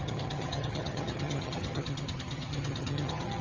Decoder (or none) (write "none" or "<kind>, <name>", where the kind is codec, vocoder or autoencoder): vocoder, HiFi-GAN